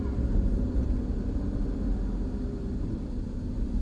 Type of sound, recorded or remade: recorded